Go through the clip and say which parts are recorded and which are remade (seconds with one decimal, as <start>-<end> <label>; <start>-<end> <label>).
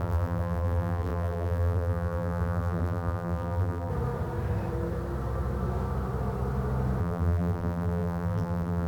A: 0.0-3.9 remade; 3.9-7.0 recorded; 7.0-8.9 remade